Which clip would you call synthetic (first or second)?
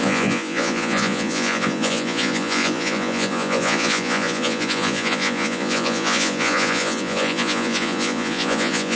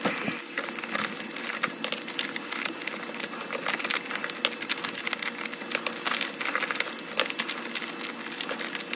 first